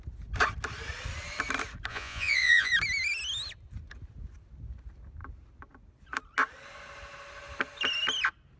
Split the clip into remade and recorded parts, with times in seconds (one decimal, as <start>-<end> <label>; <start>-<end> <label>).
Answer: 0.0-1.9 recorded; 1.9-2.7 remade; 2.7-8.6 recorded